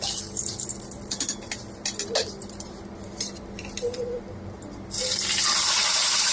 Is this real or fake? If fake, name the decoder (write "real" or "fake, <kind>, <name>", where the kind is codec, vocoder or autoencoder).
real